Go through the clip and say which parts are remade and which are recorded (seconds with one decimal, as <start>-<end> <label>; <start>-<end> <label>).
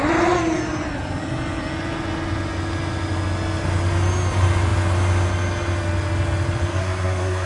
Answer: 0.0-6.7 recorded; 6.7-7.5 remade